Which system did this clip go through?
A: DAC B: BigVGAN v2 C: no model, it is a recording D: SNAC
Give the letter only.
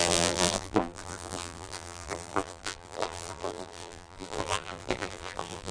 B